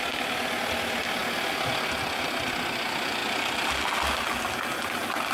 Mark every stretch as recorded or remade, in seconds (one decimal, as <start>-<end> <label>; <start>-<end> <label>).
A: 0.0-5.3 recorded